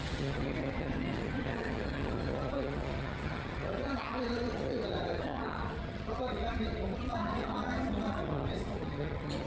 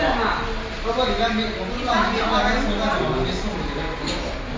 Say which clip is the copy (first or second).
first